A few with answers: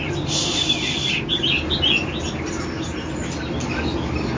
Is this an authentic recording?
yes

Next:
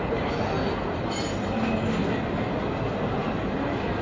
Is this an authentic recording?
yes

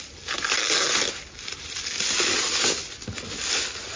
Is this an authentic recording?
yes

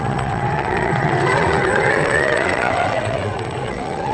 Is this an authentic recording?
no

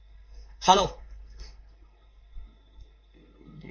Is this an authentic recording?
no